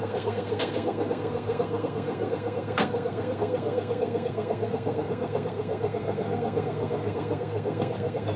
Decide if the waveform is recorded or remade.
remade